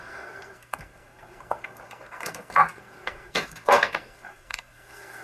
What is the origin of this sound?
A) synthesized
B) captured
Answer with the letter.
A